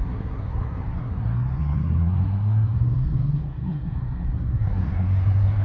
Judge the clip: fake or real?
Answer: fake